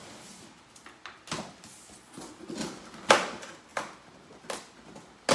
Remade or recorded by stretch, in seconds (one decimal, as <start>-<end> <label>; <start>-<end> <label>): 0.0-5.3 recorded